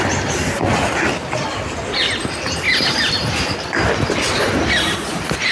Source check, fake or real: real